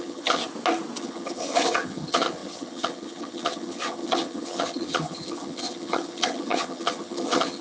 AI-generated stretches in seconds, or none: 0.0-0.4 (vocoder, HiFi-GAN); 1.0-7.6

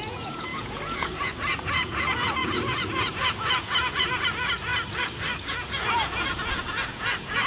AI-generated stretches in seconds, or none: 0.0-4.7 (vocoder, Vocos); 5.5-7.5

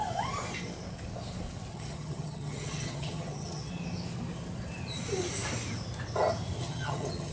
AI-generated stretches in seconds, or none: 1.7-3.7 (vocoder, HiFi-GAN); 6.6-7.3

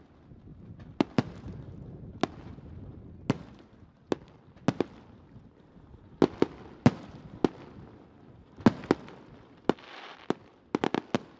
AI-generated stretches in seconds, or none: none